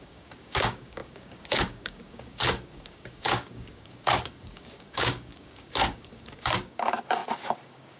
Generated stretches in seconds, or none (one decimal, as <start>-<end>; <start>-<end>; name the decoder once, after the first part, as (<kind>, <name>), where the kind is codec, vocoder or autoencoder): 0.0-8.0 (codec, DAC)